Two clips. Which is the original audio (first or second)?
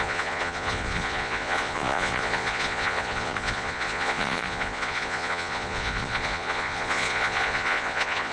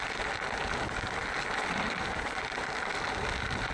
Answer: second